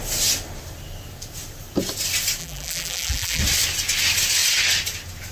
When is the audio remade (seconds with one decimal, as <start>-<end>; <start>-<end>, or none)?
2.4-3.4